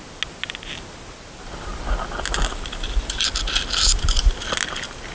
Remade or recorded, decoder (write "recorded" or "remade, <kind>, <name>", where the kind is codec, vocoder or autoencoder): recorded